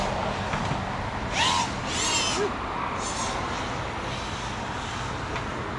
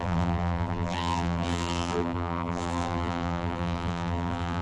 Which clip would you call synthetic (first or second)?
second